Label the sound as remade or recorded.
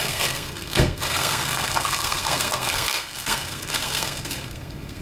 remade